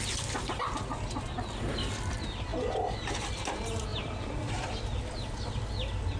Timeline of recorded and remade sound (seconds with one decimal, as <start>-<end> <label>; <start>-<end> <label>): 0.0-3.9 recorded; 3.9-4.9 remade; 4.9-6.2 recorded